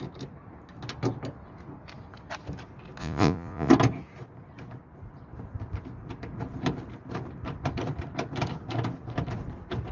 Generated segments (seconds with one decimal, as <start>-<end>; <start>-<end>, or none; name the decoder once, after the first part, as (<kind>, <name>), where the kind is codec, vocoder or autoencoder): 3.0-3.7 (vocoder, Vocos)